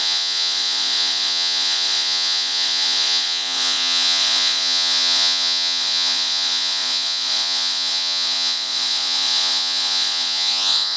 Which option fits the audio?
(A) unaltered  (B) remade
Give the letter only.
B